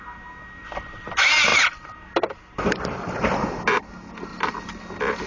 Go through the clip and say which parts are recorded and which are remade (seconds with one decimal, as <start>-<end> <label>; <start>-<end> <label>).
0.0-4.3 recorded; 4.3-4.8 remade; 4.8-5.3 recorded